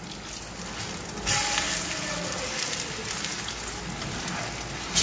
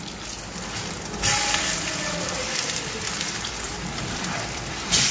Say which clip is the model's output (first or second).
second